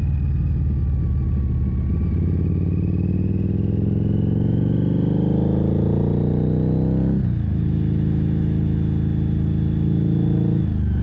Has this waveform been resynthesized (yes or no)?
no